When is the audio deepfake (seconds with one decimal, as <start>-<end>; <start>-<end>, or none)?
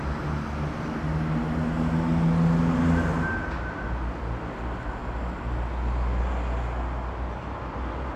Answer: none